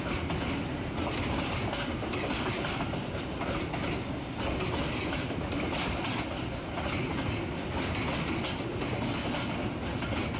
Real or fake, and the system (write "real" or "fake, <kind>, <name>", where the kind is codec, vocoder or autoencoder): real